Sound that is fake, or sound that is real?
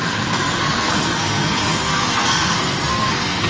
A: fake